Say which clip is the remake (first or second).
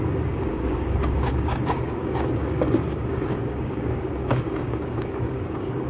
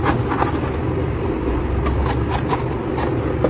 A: first